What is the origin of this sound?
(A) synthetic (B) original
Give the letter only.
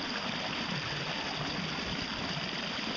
B